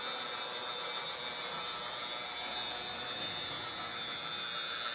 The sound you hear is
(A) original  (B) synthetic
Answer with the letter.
A